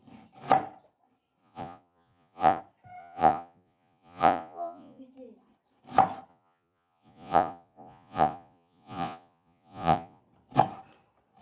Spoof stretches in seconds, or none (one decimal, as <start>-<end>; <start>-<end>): 1.4-2.6; 3.0-5.0; 6.3-10.2